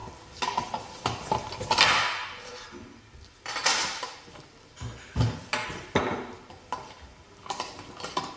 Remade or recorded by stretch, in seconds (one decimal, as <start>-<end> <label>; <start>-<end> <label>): 0.0-8.4 recorded